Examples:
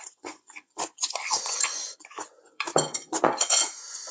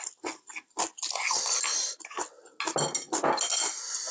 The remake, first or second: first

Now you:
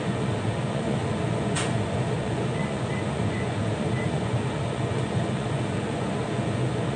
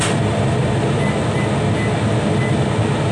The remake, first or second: first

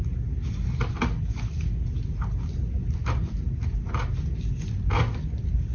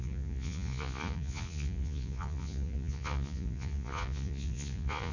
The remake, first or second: second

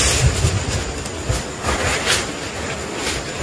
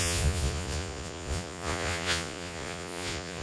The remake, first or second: second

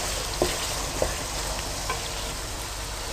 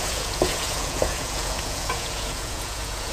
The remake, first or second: second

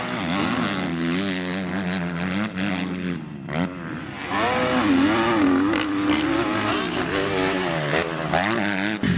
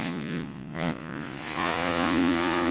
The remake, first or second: second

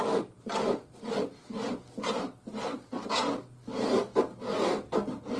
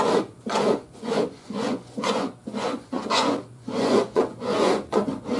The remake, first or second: second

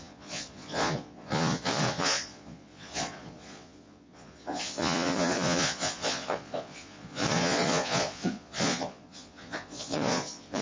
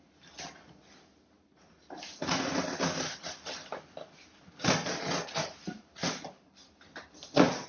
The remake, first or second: first